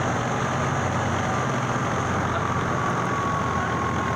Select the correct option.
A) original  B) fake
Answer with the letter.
A